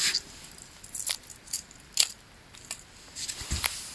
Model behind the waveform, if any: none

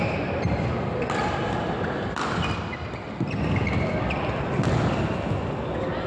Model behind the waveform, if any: none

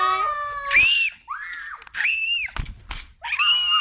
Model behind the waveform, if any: none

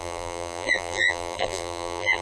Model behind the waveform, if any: vocoder, BigVGAN v2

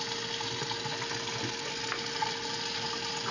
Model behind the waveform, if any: none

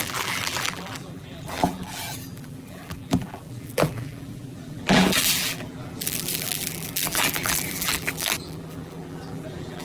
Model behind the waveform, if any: vocoder, BigVGAN v2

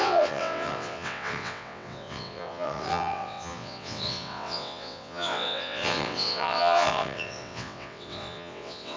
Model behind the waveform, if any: vocoder, WaveNeXt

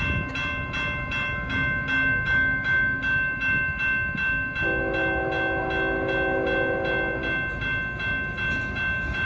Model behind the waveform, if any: none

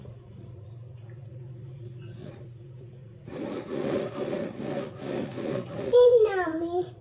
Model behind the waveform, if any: vocoder, Vocos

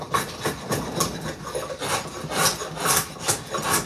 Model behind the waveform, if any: none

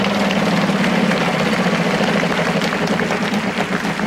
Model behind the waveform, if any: none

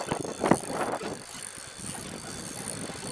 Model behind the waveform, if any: none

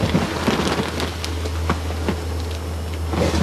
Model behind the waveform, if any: none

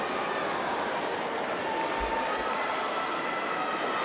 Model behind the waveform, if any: none